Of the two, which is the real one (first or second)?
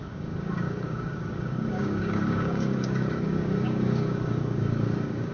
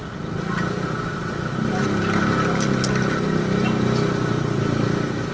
second